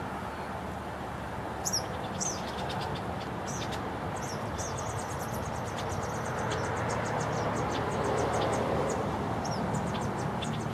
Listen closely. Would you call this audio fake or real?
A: real